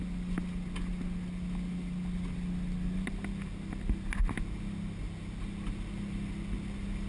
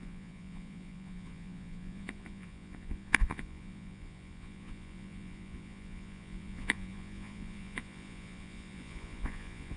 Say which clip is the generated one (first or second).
second